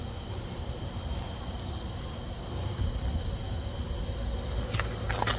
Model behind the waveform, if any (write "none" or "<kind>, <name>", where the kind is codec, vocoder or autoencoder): none